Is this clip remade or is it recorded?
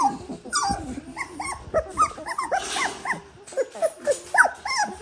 recorded